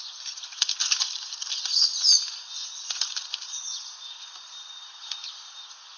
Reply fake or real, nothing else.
fake